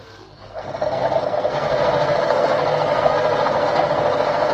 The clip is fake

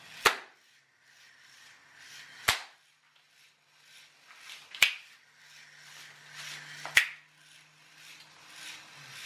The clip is real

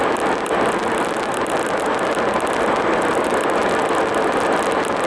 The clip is real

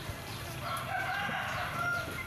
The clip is real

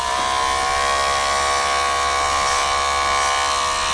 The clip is real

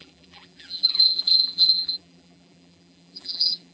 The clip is fake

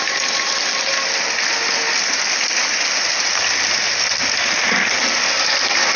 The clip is real